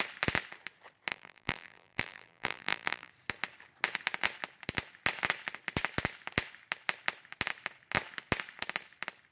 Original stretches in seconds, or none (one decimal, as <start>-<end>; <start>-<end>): 0.0-1.1; 3.1-9.3